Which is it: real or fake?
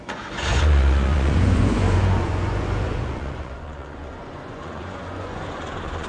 fake